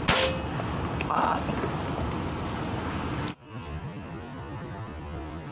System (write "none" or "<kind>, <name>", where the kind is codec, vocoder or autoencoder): none